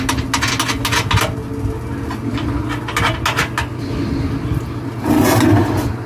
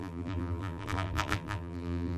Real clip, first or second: first